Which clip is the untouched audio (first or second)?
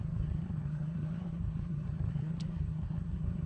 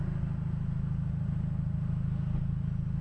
second